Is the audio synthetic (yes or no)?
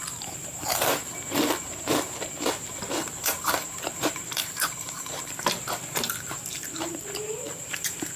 yes